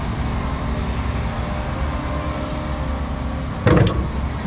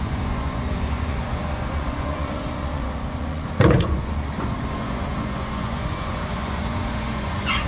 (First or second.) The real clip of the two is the first